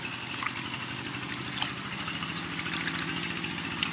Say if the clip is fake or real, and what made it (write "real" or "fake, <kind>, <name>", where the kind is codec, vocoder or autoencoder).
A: real